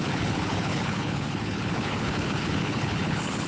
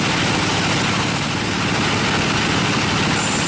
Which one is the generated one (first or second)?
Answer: first